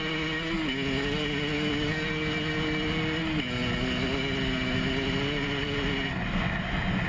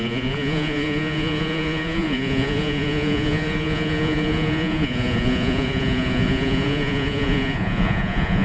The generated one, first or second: second